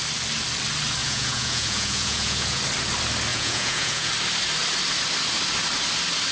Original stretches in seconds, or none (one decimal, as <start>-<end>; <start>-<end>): 0.0-1.0; 2.6-3.3; 4.1-6.3